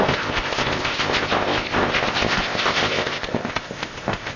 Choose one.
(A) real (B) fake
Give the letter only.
B